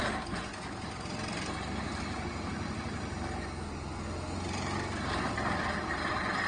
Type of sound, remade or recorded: recorded